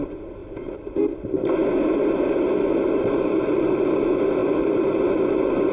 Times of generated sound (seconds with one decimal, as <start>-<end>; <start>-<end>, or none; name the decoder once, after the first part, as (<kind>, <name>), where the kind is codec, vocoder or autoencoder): 0.4-1.1 (vocoder, BigVGAN v2); 1.6-2.7; 4.4-5.7